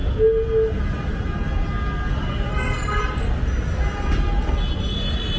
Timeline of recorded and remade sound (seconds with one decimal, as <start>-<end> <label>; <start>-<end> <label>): 0.0-2.5 recorded; 2.5-3.0 remade; 3.0-5.4 recorded